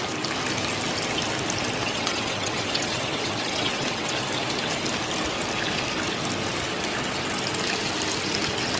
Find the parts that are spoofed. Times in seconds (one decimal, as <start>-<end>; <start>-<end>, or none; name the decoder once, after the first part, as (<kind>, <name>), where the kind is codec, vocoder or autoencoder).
1.8-4.1 (vocoder, WaveNeXt)